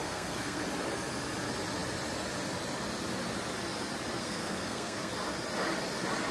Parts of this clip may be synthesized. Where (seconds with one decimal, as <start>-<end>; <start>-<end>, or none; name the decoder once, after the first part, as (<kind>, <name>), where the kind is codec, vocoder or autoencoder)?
0.0-0.6 (codec, SNAC); 4.2-5.1